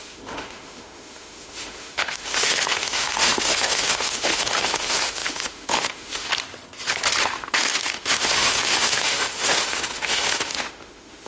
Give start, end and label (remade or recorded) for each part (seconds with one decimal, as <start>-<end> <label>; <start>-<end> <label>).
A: 0.0-6.3 remade; 6.3-7.3 recorded; 7.3-11.3 remade